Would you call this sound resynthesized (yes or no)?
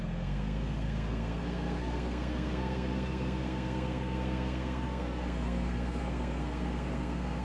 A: yes